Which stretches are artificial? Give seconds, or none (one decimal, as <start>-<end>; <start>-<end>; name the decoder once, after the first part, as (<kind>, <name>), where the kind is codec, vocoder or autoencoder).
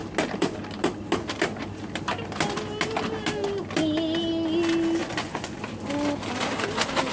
5.0-5.6 (vocoder, Vocos)